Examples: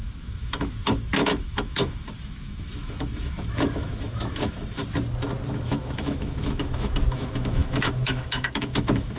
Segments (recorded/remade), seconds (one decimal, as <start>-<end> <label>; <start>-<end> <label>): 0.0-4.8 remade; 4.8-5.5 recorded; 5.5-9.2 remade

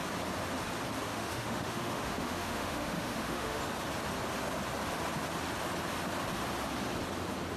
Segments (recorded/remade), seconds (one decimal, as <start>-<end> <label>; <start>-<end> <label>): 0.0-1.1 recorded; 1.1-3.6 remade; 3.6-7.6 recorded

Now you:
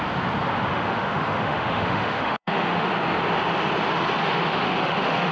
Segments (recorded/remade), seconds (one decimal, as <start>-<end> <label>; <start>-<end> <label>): 0.0-0.7 recorded; 0.7-2.9 remade; 2.9-4.2 recorded; 4.2-5.3 remade